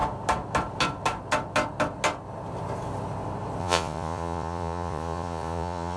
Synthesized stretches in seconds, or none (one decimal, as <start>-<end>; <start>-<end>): 3.6-6.0